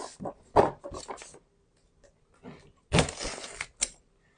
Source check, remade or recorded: recorded